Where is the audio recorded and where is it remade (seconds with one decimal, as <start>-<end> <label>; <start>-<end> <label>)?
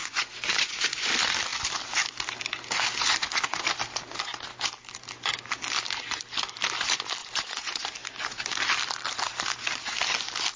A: 0.0-1.1 remade; 1.1-7.2 recorded; 7.2-7.8 remade; 7.8-10.6 recorded